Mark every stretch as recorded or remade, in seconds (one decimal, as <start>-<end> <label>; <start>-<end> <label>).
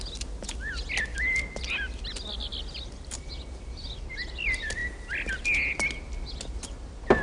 0.0-7.2 recorded